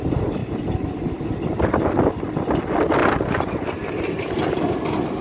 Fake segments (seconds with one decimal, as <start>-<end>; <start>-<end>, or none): none